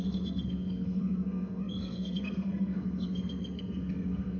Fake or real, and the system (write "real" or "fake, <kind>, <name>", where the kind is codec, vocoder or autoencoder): fake, codec, SNAC